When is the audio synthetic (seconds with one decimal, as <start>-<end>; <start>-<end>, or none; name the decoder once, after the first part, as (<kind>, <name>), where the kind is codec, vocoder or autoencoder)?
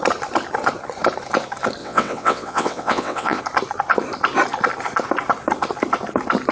1.8-3.4 (vocoder, WaveNeXt)